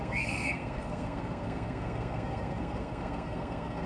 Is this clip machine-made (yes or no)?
yes